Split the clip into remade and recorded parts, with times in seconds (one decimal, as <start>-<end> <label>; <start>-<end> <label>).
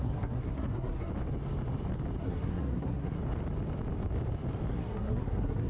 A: 0.0-1.1 remade; 1.1-2.2 recorded; 2.2-3.2 remade; 3.2-4.7 recorded; 4.7-5.7 remade